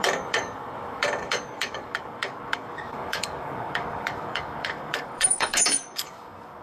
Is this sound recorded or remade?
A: remade